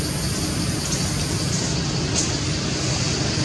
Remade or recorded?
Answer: recorded